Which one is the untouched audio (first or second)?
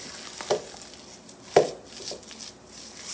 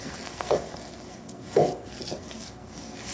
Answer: first